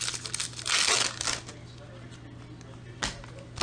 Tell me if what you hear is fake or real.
real